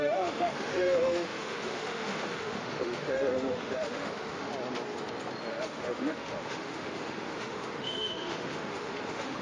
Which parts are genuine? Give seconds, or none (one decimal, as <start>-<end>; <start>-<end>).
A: 4.5-5.5